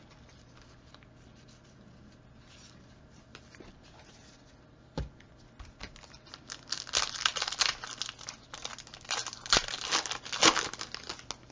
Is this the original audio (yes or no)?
yes